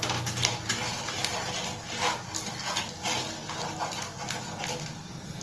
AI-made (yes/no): no